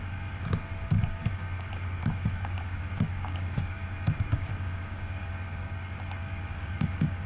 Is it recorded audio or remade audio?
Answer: remade